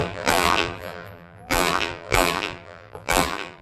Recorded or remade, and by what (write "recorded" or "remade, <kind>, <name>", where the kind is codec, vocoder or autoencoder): remade, vocoder, BigVGAN v2